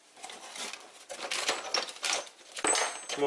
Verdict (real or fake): real